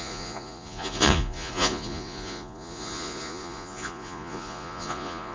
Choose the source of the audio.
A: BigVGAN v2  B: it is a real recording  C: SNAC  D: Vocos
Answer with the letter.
D